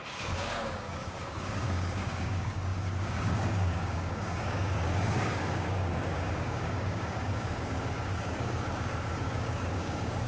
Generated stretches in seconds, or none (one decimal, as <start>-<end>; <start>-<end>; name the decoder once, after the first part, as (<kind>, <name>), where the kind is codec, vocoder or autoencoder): 0.0-10.3 (codec, DAC)